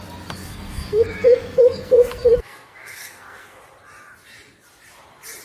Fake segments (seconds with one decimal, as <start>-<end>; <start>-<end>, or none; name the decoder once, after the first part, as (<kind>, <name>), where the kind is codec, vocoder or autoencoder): 0.4-3.6 (codec, SNAC)